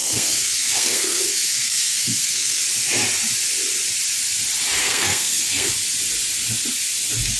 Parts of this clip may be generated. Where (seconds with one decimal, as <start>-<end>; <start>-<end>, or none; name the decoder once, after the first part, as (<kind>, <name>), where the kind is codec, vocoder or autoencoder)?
0.0-2.6 (codec, SNAC); 4.8-5.7